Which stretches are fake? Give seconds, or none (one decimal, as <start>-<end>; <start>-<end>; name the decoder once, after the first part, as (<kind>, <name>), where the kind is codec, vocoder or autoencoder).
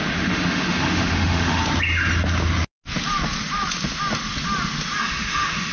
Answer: 0.0-1.6 (autoencoder, DAC-VAE); 5.0-5.7